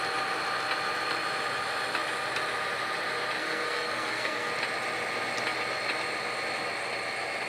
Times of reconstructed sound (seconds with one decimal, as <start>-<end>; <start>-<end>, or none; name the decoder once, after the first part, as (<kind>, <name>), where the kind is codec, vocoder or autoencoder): 3.4-4.5 (codec, SNAC)